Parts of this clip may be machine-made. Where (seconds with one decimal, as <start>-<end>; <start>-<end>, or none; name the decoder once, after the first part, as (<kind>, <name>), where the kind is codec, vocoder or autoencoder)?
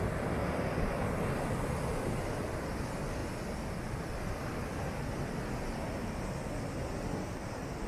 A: none